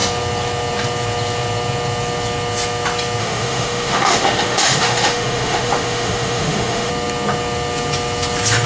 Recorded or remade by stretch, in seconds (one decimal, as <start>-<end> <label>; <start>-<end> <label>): 0.0-3.2 recorded; 3.2-6.9 remade; 6.9-8.7 recorded